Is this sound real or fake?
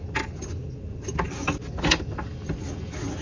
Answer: real